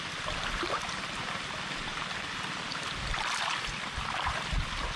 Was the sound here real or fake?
real